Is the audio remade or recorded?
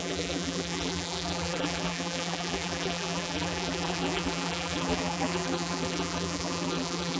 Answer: remade